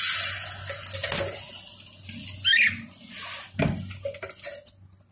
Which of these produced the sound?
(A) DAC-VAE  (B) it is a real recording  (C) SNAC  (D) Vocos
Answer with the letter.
B